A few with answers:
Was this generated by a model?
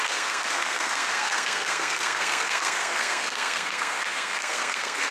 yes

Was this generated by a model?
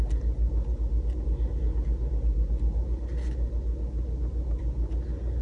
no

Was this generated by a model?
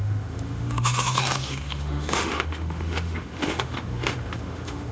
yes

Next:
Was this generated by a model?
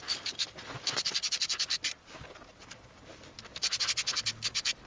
no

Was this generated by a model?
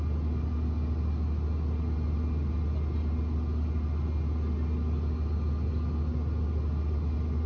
no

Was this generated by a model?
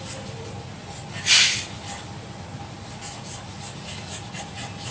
no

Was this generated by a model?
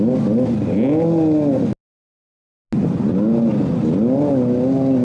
no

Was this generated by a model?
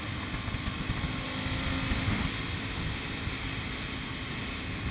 no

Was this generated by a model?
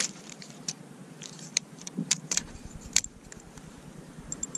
yes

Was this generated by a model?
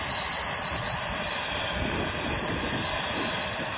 no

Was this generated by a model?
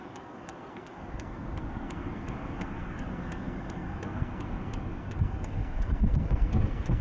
yes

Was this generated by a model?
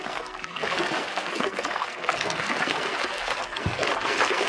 yes